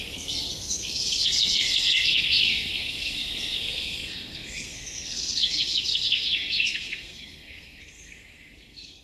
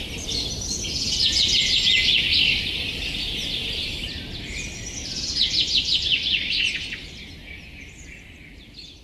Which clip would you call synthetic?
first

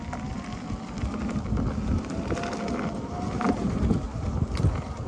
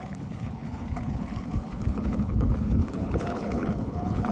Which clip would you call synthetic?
second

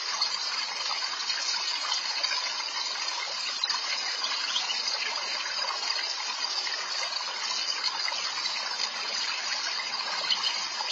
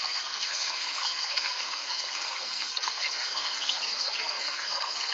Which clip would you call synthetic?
second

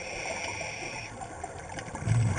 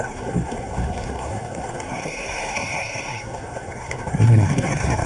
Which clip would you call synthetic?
second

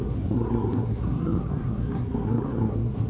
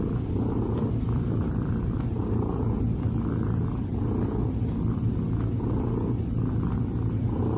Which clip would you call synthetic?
first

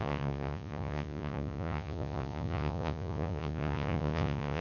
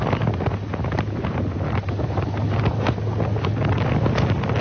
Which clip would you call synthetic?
first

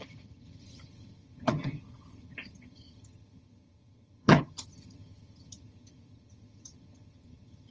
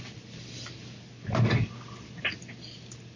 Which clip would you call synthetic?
first